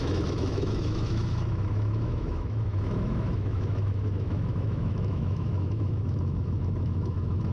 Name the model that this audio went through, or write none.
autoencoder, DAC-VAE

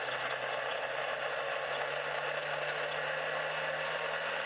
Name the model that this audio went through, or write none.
none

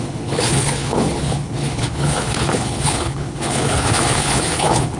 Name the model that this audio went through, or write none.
codec, HILCodec